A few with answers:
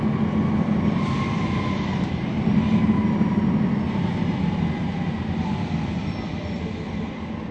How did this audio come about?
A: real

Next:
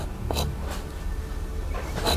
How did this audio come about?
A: real